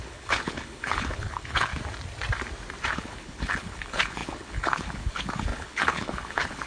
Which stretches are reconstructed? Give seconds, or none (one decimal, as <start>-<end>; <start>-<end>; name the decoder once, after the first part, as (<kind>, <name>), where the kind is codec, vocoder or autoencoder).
0.0-1.7 (codec, HILCodec); 2.9-6.7